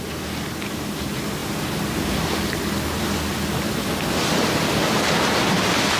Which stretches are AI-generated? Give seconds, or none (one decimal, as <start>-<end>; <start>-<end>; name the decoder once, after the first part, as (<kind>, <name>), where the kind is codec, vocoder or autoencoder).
none